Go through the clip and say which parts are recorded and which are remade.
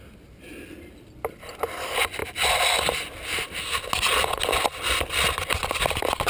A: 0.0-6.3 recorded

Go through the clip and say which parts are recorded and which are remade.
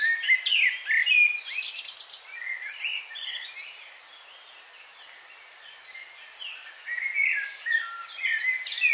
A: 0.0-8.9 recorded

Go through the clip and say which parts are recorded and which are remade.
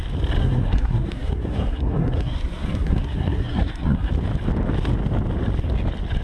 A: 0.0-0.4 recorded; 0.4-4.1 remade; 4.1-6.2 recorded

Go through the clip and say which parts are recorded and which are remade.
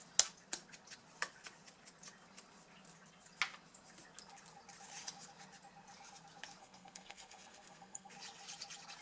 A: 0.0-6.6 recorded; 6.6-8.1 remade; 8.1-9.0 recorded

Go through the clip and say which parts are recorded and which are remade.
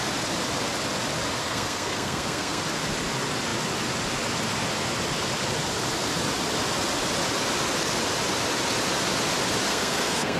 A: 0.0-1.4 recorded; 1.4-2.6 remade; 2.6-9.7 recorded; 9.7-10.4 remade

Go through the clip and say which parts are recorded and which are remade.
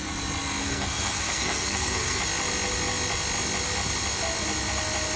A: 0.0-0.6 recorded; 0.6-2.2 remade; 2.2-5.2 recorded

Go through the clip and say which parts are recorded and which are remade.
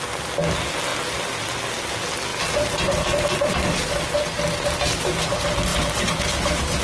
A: 0.0-6.8 recorded